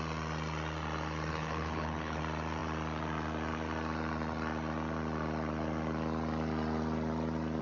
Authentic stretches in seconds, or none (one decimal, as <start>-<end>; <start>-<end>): 0.0-1.3; 2.2-7.6

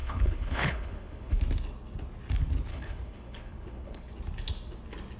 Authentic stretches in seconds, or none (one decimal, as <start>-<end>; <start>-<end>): 1.4-2.7; 4.1-5.2

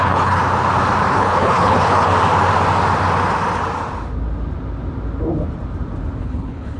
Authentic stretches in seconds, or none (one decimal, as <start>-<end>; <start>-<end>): 0.4-1.1; 2.1-6.2

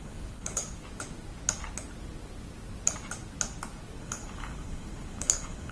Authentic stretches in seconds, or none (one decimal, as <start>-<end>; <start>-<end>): 0.6-4.0